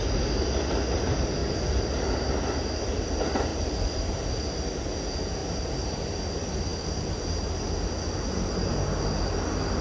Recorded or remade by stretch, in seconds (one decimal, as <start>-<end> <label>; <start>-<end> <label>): 0.0-5.4 recorded; 5.4-6.2 remade; 6.2-9.8 recorded

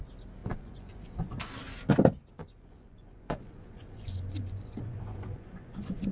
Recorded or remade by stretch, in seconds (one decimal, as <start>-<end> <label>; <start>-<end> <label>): 0.0-0.4 recorded; 0.4-1.5 remade; 1.5-2.4 recorded; 2.4-6.1 remade